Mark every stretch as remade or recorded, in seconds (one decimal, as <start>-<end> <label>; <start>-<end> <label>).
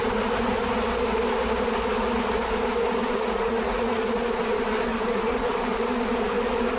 0.0-3.0 recorded; 3.0-4.4 remade; 4.4-4.9 recorded; 4.9-5.5 remade; 5.5-6.8 recorded